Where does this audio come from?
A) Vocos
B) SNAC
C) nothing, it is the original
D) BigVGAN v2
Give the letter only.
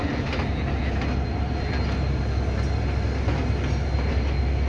C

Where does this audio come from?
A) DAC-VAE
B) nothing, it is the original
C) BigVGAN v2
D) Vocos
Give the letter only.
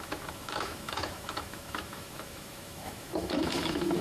A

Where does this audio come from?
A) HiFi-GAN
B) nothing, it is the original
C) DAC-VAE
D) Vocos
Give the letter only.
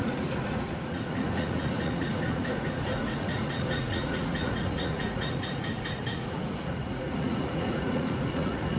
D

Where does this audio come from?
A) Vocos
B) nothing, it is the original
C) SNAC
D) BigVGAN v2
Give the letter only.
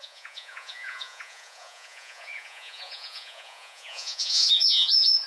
A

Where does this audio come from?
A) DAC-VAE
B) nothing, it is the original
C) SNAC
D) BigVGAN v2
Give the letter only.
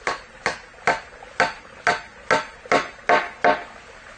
B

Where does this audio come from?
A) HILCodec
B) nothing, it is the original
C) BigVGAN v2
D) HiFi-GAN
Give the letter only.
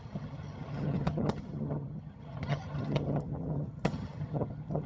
D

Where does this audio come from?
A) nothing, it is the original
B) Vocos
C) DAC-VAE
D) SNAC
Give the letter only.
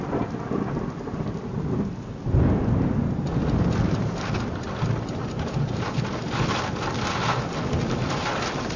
A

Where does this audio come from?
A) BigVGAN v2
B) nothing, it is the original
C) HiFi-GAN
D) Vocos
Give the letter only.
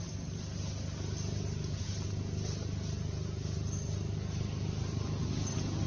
B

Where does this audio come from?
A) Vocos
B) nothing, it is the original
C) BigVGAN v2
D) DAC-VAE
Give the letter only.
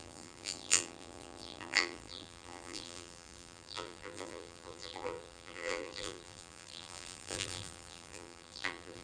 C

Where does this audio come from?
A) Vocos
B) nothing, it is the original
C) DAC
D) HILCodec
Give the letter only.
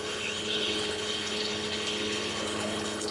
D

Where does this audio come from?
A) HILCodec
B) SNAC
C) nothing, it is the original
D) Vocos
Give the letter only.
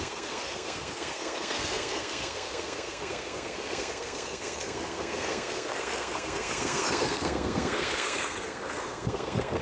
B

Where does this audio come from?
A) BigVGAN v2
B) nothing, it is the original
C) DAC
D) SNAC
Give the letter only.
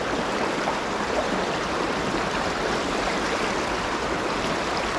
A